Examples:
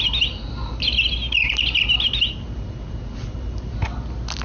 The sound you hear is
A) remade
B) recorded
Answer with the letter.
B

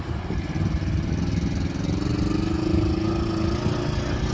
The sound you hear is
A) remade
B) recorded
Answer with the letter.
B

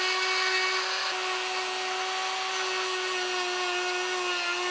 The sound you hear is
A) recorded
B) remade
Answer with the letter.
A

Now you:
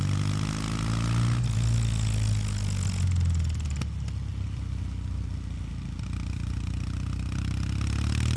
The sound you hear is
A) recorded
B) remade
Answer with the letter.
A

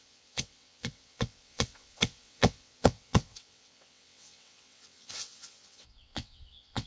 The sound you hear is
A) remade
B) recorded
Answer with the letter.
A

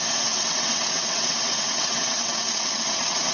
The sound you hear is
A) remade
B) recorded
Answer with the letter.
A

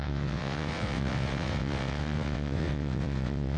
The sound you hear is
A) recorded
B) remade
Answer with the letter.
B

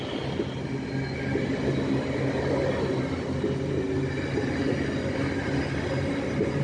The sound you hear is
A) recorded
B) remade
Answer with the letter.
A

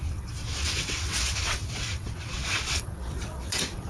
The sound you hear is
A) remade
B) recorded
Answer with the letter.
A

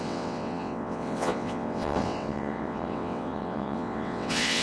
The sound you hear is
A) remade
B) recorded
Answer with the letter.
A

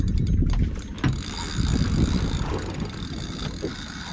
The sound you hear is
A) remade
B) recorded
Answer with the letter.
B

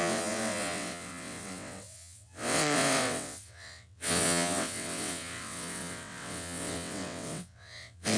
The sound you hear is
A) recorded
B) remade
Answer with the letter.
B